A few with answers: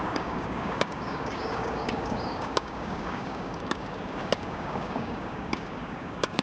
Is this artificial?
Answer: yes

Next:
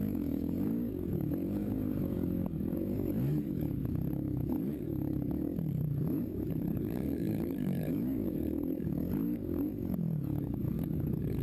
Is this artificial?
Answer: yes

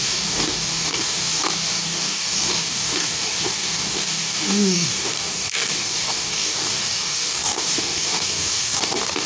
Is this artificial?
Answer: yes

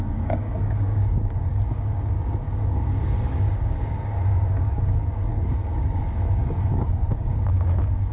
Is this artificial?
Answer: yes